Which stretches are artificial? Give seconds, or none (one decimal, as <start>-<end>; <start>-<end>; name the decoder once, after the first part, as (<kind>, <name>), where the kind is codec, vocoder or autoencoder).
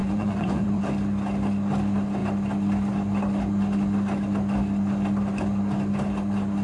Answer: 0.0-0.8 (vocoder, Vocos)